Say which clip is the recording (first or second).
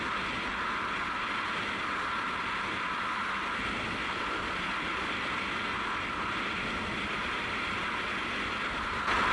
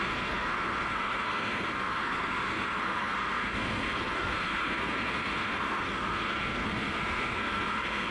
first